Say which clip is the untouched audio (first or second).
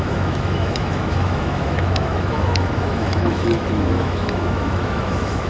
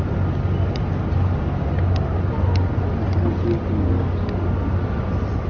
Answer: second